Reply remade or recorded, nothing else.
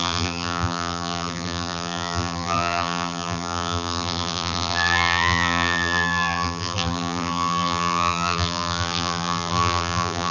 remade